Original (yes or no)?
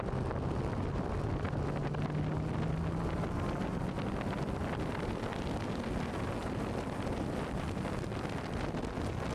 yes